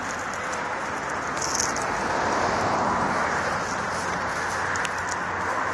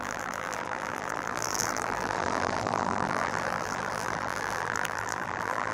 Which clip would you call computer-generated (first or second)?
second